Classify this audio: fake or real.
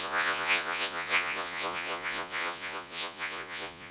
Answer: fake